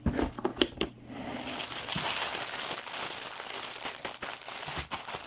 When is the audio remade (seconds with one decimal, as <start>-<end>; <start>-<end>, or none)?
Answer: none